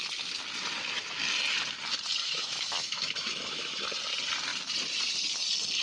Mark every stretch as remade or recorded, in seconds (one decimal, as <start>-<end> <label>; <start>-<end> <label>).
0.0-2.2 recorded; 2.2-3.8 remade; 3.8-5.8 recorded

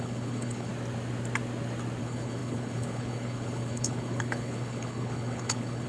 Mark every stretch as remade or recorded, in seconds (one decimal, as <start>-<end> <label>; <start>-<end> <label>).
0.0-0.7 remade; 0.7-2.0 recorded; 2.0-5.9 remade

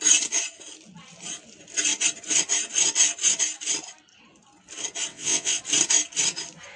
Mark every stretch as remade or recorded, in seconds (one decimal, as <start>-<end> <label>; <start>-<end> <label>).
0.0-5.1 recorded; 5.1-5.6 remade; 5.6-6.8 recorded

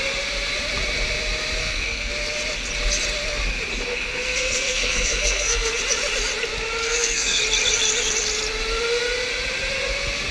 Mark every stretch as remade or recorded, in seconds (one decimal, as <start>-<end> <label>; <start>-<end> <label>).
0.0-1.6 recorded; 1.6-2.1 remade; 2.1-3.9 recorded; 3.9-5.8 remade; 5.8-6.8 recorded; 6.8-7.4 remade; 7.4-10.3 recorded

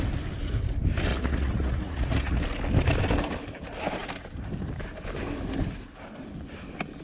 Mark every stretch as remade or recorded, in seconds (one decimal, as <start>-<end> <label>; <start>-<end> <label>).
0.0-1.1 recorded; 1.1-2.4 remade; 2.4-7.0 recorded

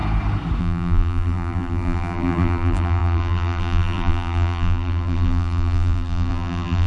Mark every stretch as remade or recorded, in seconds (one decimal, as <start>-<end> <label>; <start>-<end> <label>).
0.0-0.6 recorded; 0.6-6.9 remade